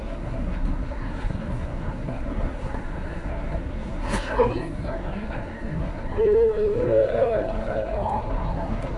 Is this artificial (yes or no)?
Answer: yes